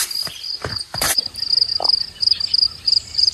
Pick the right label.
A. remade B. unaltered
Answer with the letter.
B